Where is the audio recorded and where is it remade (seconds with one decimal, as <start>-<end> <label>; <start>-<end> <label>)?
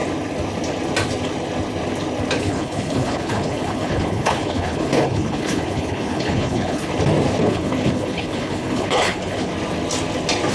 0.0-2.4 recorded; 2.4-6.9 remade; 6.9-7.4 recorded; 7.4-9.5 remade; 9.5-10.5 recorded